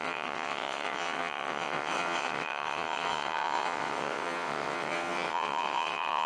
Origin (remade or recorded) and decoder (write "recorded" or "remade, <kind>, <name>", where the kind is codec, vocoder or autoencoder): remade, vocoder, WaveNeXt